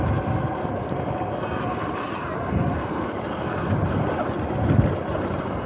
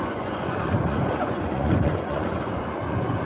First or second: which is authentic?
first